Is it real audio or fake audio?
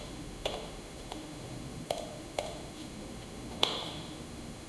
fake